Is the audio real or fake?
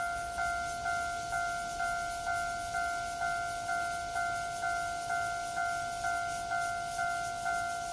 real